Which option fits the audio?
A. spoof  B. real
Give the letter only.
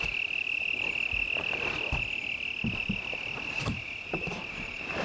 B